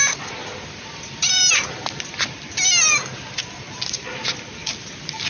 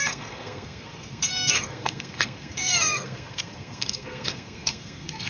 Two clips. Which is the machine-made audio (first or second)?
second